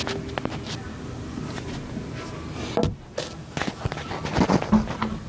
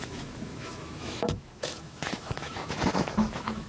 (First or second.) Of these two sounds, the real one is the first